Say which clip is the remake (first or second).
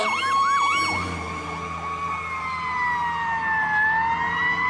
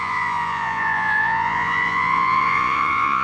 second